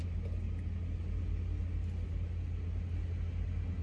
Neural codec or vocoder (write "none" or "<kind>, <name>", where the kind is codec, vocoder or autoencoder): none